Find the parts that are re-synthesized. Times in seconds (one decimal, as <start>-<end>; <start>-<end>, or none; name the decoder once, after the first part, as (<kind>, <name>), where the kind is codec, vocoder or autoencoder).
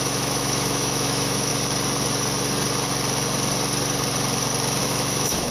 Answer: 0.0-1.5 (autoencoder, DAC-VAE); 4.8-5.5